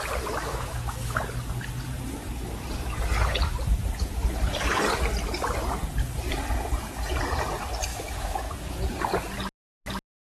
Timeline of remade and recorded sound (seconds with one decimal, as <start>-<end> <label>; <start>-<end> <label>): 0.0-0.4 recorded; 0.4-1.2 remade; 1.2-7.9 recorded; 7.9-8.8 remade; 8.8-10.2 recorded